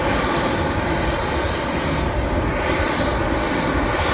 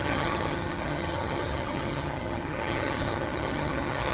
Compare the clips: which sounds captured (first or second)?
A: first